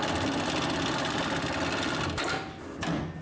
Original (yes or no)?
yes